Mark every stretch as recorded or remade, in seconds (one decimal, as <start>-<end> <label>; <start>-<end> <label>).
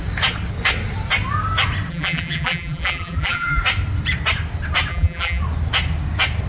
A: 0.0-1.9 recorded; 1.9-3.6 remade; 3.6-4.9 recorded; 4.9-5.4 remade; 5.4-6.5 recorded